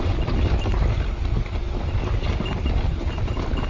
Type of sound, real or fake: real